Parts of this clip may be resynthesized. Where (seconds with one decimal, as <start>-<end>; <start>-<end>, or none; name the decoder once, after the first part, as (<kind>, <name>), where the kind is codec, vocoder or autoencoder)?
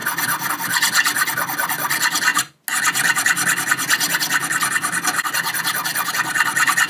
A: none